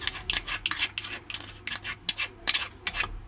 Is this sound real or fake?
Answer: real